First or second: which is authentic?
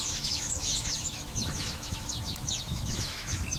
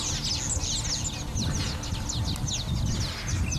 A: second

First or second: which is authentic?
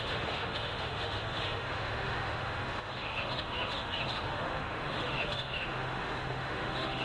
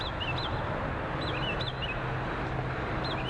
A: second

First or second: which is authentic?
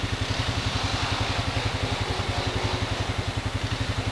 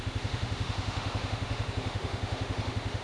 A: first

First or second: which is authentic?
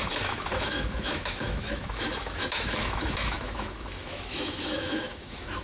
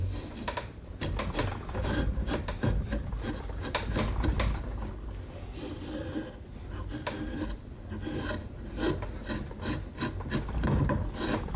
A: second